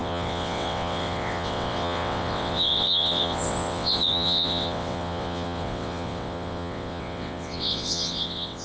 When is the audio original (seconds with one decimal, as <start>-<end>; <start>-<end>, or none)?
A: none